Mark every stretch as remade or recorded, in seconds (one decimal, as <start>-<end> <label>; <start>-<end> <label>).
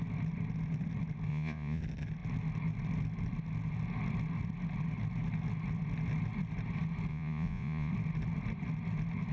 0.0-1.3 recorded; 1.3-1.8 remade; 1.8-7.1 recorded; 7.1-7.9 remade; 7.9-9.3 recorded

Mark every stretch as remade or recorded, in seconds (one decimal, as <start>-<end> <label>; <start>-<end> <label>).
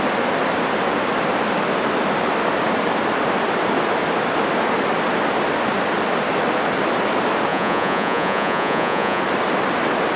0.0-7.5 recorded; 7.5-9.2 remade; 9.2-10.2 recorded